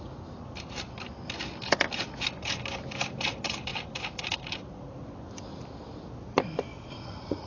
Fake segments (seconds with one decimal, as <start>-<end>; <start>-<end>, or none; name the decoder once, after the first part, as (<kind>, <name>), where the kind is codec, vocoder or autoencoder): 6.7-7.5 (vocoder, Vocos)